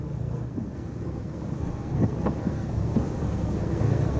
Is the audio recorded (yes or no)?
no